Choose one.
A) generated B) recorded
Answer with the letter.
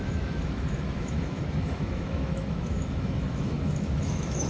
A